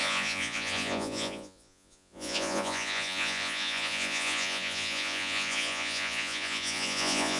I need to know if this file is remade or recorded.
remade